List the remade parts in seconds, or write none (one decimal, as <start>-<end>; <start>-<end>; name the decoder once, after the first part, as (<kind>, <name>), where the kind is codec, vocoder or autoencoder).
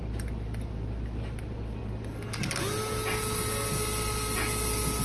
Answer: none